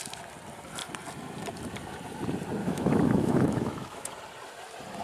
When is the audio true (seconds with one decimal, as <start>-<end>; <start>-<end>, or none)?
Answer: 0.0-2.6; 4.1-5.0